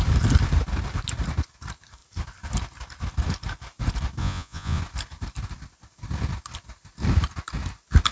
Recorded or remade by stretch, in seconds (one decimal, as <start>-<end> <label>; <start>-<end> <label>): 0.0-4.2 recorded; 4.2-4.8 remade; 4.8-8.1 recorded